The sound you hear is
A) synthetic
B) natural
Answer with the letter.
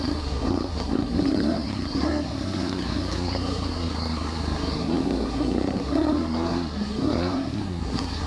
A